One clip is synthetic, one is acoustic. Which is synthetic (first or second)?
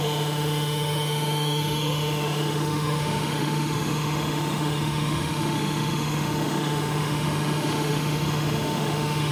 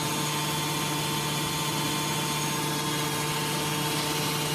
first